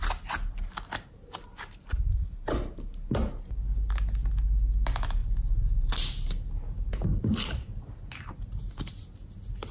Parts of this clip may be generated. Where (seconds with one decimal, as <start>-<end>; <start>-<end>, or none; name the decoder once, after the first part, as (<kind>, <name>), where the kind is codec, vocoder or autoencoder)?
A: none